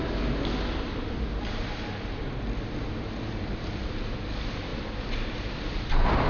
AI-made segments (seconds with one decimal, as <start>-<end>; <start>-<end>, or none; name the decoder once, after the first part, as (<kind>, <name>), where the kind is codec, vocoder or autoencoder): none